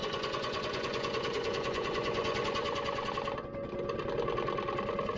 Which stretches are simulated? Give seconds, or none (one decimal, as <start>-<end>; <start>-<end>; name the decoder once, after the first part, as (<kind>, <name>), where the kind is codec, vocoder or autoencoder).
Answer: 0.0-3.1 (vocoder, Vocos)